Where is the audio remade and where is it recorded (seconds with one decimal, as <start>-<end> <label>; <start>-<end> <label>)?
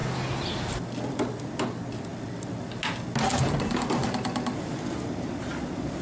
0.0-6.0 recorded